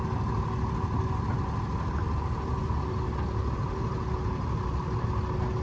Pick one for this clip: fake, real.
real